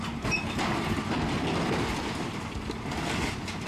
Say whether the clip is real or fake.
real